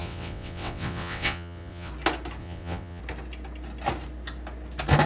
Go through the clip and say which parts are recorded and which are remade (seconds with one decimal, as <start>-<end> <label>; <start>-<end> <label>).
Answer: 0.0-1.9 remade; 1.9-2.4 recorded; 2.4-3.0 remade; 3.0-5.1 recorded